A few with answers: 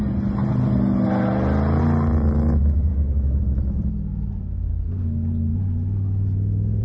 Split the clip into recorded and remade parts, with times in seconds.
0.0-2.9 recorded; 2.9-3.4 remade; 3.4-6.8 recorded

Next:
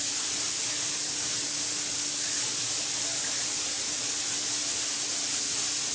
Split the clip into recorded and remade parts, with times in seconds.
0.0-5.9 recorded

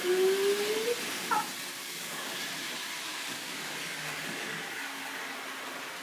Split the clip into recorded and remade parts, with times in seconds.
0.0-1.8 recorded; 1.8-2.4 remade; 2.4-3.1 recorded; 3.1-5.0 remade; 5.0-6.0 recorded

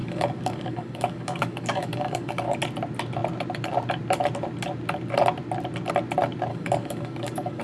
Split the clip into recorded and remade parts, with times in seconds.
0.0-2.6 remade; 2.6-6.5 recorded; 6.5-7.6 remade

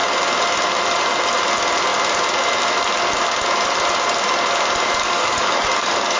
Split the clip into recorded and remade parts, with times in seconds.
0.0-5.0 recorded; 5.0-6.2 remade

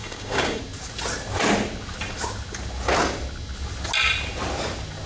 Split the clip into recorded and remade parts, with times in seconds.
0.0-0.6 remade; 0.6-5.1 recorded

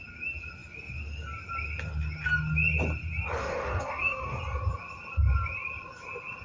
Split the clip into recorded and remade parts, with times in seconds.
0.0-3.4 recorded; 3.4-4.4 remade; 4.4-6.4 recorded